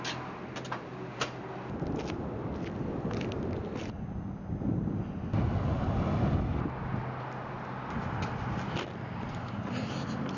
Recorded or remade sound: recorded